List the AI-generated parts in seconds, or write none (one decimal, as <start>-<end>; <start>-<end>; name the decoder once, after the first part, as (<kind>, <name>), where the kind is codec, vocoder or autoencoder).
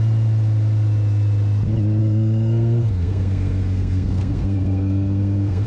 2.0-5.7 (codec, SNAC)